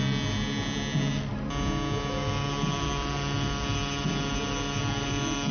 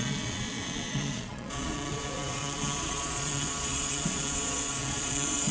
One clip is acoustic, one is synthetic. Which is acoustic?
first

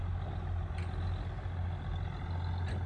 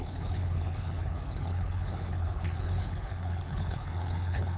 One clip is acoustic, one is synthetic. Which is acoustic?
first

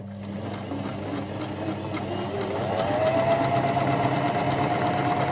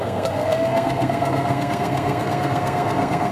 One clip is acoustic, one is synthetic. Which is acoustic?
first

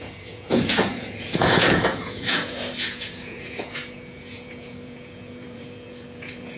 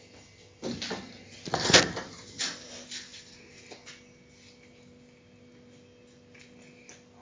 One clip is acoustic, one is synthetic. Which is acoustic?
second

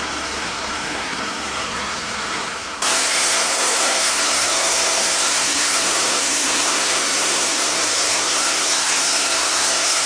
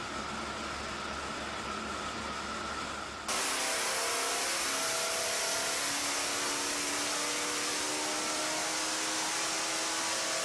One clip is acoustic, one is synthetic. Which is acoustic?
second